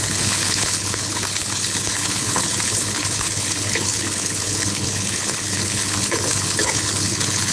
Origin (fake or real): fake